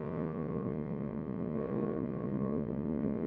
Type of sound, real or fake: fake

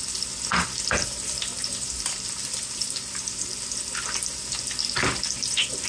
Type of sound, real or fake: real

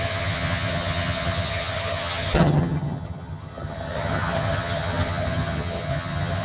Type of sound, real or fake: fake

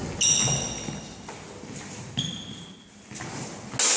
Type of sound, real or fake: real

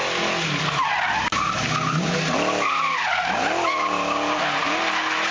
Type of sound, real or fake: real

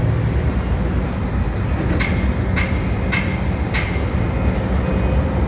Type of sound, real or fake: real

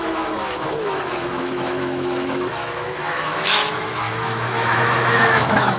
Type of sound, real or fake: fake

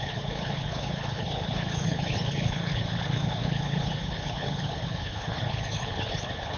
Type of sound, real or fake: fake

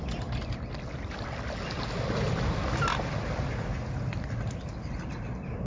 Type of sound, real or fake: real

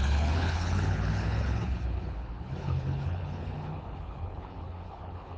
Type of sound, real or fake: fake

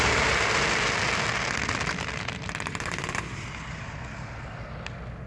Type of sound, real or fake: real